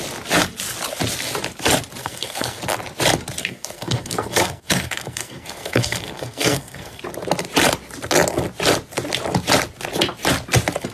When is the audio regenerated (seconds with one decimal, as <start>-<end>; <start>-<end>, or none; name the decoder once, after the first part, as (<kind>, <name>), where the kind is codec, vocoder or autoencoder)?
2.0-2.6 (codec, SNAC); 3.4-7.0